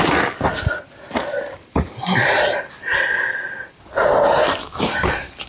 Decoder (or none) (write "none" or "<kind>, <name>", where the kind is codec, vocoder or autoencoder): none